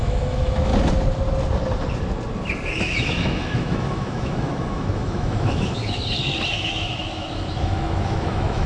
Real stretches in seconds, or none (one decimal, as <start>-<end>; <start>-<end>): 0.7-2.8; 5.8-6.5